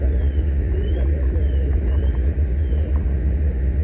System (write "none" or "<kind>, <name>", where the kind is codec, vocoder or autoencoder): vocoder, Vocos